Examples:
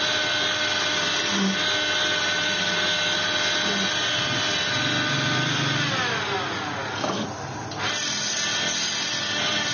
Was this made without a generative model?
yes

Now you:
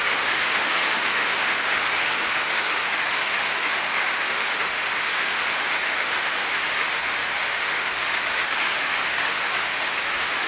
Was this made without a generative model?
no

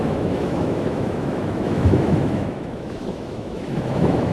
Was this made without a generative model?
no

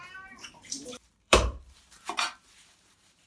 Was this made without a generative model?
no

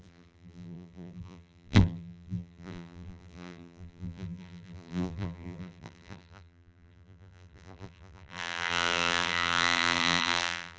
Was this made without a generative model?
no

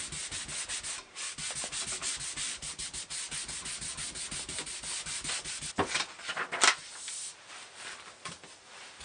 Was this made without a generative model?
yes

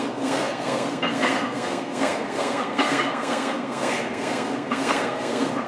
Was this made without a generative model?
no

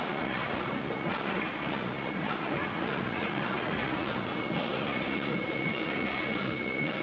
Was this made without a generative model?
no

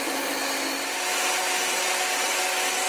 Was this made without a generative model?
yes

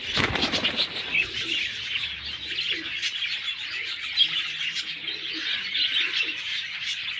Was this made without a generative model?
yes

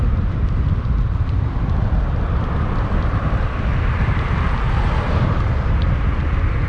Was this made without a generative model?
no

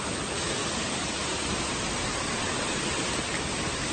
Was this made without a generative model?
yes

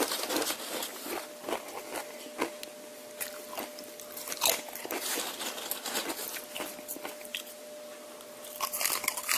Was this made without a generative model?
yes